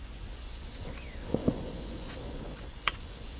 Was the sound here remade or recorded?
remade